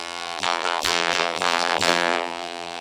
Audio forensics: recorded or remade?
remade